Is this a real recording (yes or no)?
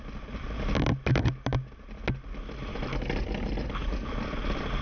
yes